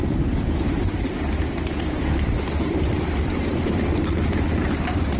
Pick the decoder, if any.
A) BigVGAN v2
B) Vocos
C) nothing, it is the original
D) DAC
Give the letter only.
A